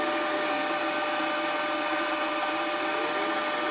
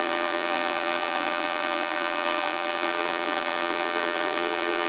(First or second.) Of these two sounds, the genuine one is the first